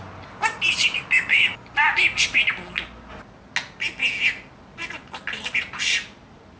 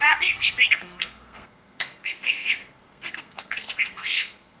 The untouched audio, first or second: first